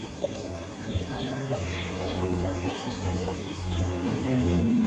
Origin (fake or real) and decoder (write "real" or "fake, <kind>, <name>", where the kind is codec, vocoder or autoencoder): fake, codec, SNAC